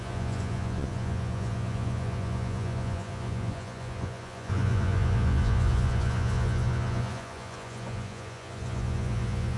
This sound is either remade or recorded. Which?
remade